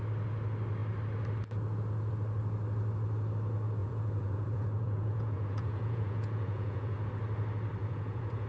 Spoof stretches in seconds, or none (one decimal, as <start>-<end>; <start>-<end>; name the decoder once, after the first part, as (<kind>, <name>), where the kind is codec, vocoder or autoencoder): 3.8-7.1 (vocoder, Vocos); 7.8-8.5